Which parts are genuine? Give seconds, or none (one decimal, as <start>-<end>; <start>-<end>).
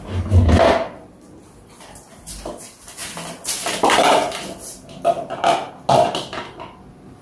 0.0-7.2